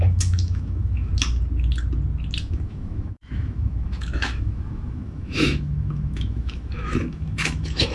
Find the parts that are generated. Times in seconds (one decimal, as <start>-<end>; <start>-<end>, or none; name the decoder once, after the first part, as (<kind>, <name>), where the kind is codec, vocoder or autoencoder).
0.0-1.1 (autoencoder, DAC-VAE); 2.4-7.9

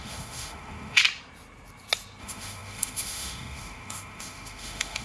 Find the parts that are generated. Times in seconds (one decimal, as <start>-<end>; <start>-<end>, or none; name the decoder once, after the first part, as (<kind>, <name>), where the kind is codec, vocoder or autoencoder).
0.0-1.0 (autoencoder, DAC-VAE); 2.2-5.0